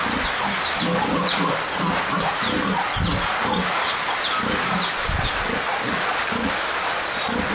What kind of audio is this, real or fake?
real